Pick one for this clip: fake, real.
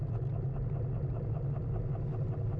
real